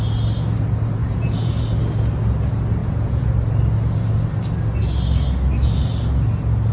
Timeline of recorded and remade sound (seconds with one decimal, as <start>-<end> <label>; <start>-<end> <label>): 0.0-1.0 recorded; 1.0-1.5 remade; 1.5-2.8 recorded; 2.8-3.3 remade; 3.3-6.7 recorded